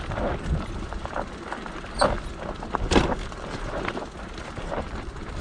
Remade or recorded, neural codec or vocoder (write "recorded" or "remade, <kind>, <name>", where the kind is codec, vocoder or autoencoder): recorded